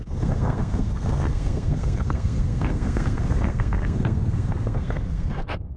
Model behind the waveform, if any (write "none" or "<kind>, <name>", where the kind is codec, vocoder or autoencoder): codec, SNAC